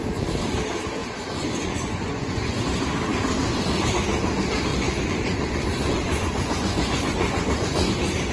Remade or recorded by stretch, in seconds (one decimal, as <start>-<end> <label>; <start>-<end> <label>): 0.0-1.0 recorded; 1.0-2.6 remade; 2.6-4.7 recorded; 4.7-7.9 remade; 7.9-8.3 recorded